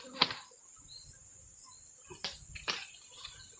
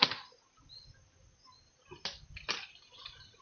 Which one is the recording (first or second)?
second